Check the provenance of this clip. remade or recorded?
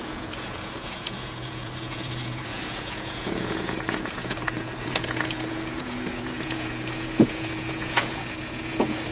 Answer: remade